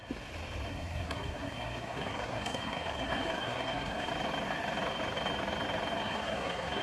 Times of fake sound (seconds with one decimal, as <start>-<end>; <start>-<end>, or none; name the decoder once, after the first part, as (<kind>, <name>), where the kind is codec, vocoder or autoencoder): 0.7-4.1 (codec, SNAC); 6.0-6.8